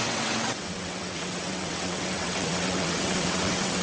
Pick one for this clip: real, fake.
fake